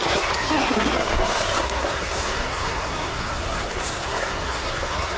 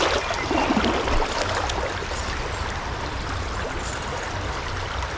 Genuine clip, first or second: second